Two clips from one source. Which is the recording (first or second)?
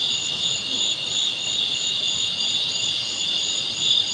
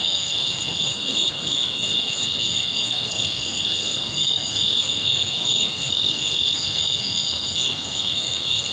first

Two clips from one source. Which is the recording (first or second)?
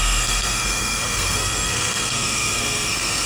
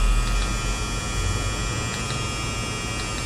second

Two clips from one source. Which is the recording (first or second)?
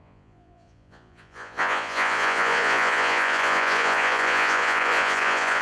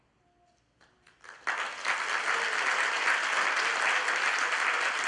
second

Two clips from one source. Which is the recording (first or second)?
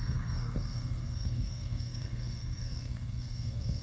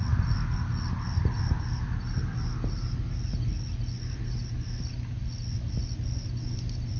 second